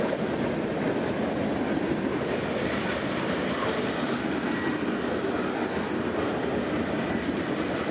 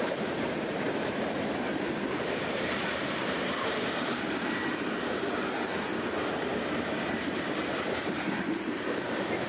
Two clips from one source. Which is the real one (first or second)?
first